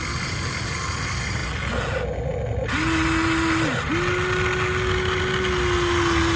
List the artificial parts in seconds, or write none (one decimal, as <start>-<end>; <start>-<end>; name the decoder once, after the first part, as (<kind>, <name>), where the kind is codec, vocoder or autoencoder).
none